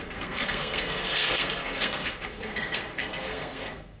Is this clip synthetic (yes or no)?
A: yes